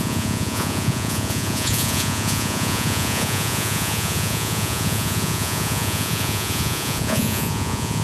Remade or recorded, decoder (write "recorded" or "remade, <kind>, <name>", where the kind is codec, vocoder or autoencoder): remade, vocoder, Vocos